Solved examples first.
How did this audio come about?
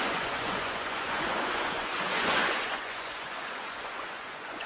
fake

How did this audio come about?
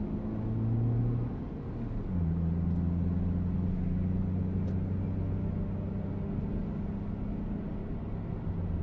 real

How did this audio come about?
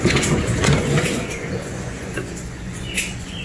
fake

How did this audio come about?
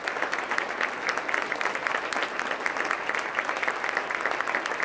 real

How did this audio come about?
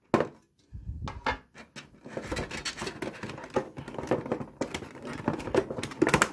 real